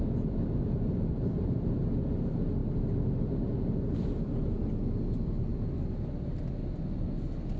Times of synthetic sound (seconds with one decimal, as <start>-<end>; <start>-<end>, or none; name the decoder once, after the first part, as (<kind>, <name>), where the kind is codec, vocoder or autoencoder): none